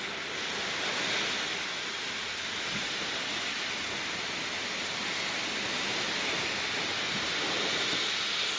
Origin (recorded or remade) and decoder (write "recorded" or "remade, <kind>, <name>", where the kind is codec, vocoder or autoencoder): recorded